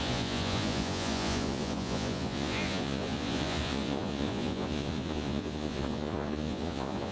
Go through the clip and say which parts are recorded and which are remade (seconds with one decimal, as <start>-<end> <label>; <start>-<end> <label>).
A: 0.0-7.1 remade